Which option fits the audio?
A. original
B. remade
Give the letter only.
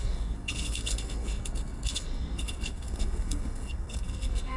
B